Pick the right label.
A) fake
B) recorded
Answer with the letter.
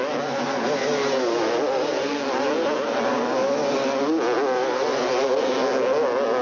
B